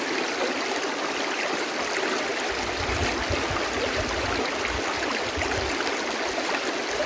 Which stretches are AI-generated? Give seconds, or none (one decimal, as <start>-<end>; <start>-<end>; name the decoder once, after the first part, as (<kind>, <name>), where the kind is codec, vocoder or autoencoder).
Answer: none